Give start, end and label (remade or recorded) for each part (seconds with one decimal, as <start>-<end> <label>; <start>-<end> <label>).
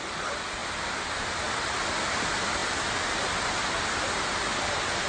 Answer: 0.0-5.1 recorded